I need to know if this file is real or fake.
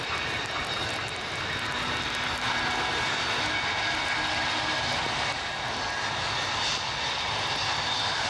real